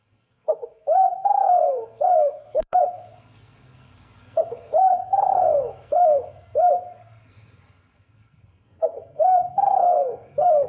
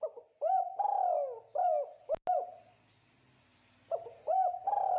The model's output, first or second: first